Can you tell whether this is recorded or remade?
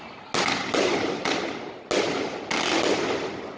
recorded